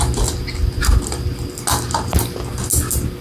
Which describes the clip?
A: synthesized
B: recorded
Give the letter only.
B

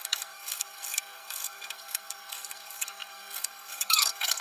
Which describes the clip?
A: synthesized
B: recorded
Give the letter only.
A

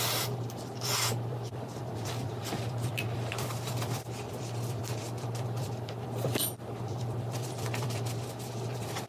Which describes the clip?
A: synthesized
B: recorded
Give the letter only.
A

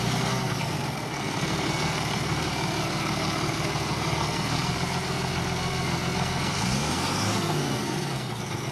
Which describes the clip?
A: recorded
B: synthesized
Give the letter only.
B